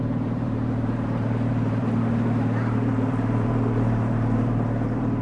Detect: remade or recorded remade